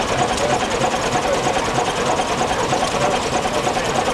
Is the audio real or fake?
real